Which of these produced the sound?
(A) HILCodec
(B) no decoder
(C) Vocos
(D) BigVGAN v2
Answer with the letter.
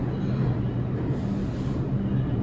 B